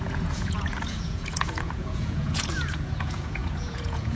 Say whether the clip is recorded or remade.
remade